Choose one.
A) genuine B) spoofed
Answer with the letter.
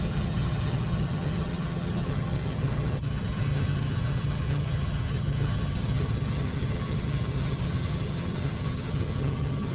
B